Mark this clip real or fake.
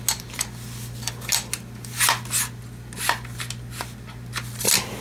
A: real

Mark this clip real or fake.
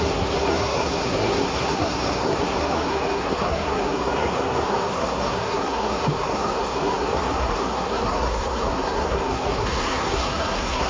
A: fake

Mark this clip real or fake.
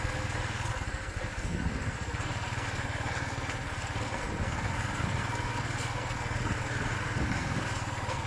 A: fake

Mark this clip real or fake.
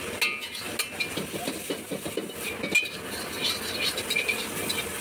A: real